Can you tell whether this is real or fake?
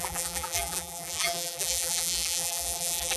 fake